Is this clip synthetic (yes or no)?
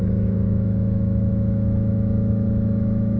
yes